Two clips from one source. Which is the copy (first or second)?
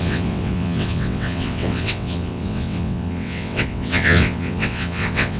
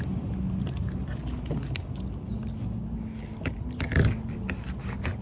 first